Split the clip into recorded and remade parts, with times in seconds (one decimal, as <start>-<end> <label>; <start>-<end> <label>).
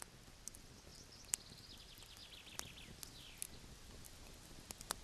0.0-5.0 recorded